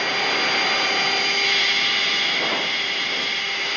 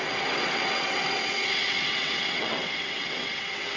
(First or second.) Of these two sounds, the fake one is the second